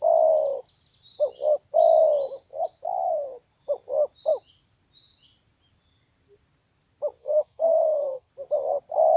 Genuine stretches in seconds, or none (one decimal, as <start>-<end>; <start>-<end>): 0.0-7.2; 8.3-9.2